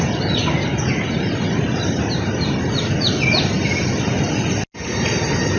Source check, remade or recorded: recorded